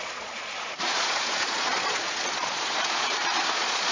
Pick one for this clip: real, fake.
fake